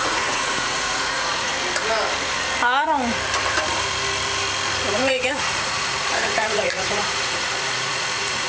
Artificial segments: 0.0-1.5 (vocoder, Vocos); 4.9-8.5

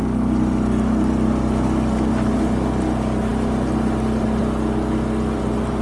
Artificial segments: none

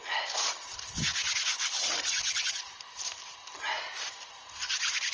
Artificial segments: none

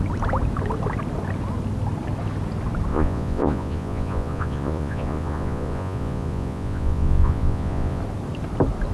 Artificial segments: 2.9-8.0 (vocoder, Vocos)

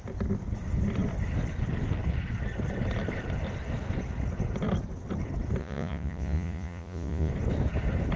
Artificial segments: 5.6-7.3 (vocoder, Vocos)